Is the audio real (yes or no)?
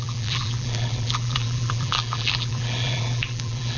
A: no